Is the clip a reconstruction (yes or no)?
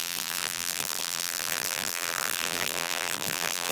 yes